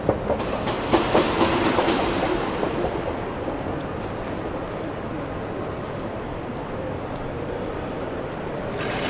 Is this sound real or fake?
fake